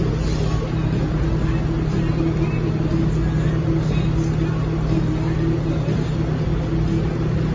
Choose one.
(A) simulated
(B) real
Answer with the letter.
B